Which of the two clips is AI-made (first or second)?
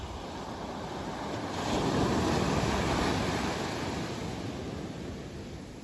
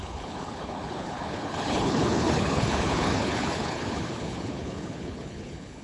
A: second